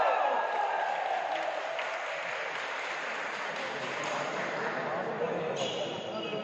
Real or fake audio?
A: real